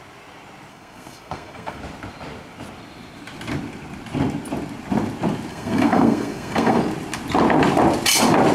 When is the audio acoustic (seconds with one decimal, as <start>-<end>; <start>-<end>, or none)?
0.0-0.7; 1.8-5.5; 6.8-8.5